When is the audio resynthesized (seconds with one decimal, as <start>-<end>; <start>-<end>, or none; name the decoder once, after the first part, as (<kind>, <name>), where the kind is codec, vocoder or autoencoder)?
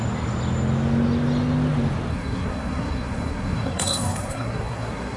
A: 2.1-5.2 (codec, SNAC)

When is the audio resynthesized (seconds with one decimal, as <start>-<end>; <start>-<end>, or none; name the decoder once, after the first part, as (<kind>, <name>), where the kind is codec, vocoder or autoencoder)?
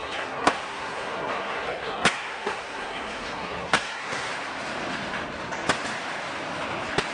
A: 0.0-4.3 (codec, SNAC)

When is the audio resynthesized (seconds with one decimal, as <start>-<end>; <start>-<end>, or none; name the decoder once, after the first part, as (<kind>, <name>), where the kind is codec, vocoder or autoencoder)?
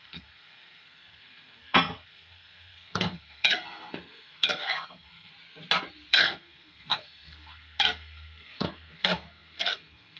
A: 0.0-5.3 (codec, SNAC); 6.1-10.2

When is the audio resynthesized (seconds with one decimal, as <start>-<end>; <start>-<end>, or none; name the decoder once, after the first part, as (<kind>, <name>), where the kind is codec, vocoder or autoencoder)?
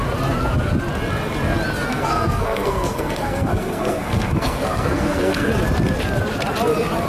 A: 1.9-5.5 (codec, SNAC)